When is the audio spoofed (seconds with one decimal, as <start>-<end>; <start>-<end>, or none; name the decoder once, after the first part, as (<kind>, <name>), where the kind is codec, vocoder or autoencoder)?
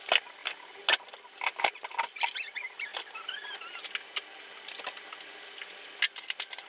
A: none